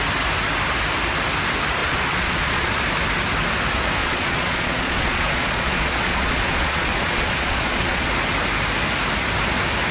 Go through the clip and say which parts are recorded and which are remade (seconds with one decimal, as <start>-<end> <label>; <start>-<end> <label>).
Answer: 0.0-1.8 recorded; 1.8-2.7 remade; 2.7-4.0 recorded; 4.0-8.1 remade; 8.1-9.9 recorded